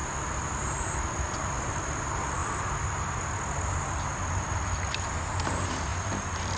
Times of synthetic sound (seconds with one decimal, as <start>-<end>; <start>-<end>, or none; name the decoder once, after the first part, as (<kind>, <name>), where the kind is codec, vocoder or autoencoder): 0.0-2.4 (vocoder, BigVGAN v2); 4.3-6.6

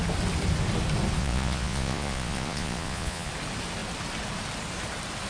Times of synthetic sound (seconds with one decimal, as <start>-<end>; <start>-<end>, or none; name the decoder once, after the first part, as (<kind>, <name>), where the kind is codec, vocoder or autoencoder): 1.2-3.3 (vocoder, Vocos)

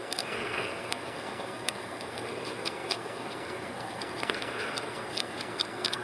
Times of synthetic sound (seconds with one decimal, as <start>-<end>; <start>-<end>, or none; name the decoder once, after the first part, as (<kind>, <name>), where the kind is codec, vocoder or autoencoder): 0.0-6.0 (codec, SNAC)

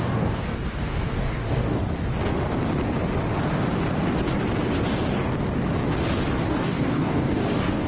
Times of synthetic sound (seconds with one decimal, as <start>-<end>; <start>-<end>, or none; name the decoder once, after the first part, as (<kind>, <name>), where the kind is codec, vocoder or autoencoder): 0.0-1.8 (codec, DAC); 6.5-7.9

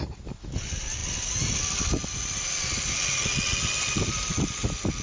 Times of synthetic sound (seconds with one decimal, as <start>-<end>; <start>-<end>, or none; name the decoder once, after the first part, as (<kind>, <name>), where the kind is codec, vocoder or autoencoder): none

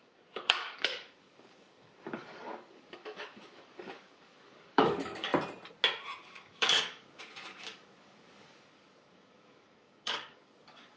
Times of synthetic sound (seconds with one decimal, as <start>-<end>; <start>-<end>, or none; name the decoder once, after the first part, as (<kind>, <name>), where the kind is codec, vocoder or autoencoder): 0.0-5.3 (codec, DAC); 6.2-11.0

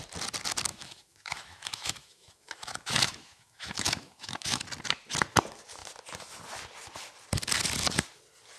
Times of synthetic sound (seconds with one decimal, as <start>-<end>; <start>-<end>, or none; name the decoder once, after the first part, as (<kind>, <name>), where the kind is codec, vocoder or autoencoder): 0.7-4.6 (autoencoder, DAC-VAE)

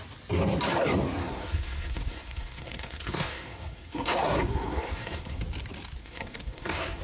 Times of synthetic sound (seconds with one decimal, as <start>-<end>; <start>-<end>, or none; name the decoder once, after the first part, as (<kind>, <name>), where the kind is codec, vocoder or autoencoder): 1.2-5.4 (codec, SNAC); 6.0-7.0